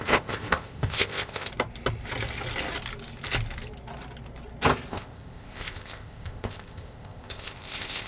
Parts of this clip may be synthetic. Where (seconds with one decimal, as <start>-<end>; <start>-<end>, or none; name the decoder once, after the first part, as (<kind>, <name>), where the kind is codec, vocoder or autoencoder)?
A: 0.0-1.5 (codec, ZipCodec); 4.9-8.1